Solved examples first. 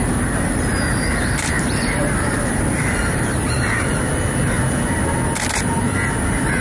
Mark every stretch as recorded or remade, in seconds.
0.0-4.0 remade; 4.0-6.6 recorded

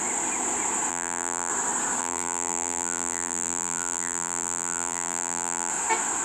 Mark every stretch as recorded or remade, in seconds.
0.0-0.9 recorded; 0.9-1.5 remade; 1.5-2.0 recorded; 2.0-5.7 remade; 5.7-6.2 recorded

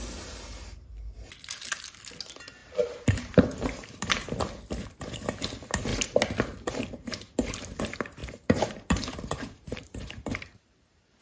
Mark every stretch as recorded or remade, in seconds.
0.0-2.6 recorded; 2.6-4.3 remade; 4.3-5.9 recorded; 5.9-6.7 remade; 6.7-8.2 recorded; 8.2-11.2 remade